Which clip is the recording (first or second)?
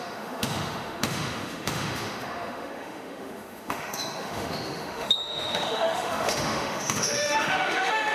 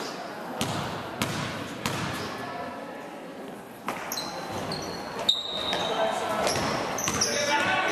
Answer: second